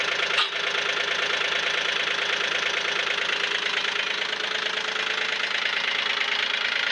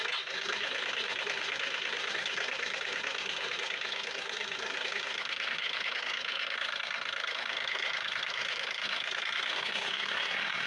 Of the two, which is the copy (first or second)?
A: second